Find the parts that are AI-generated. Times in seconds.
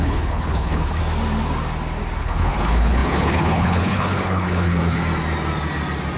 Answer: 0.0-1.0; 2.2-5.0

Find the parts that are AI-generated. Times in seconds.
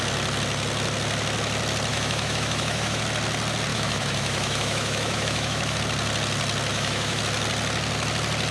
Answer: 1.9-3.0; 3.7-5.8; 6.7-7.2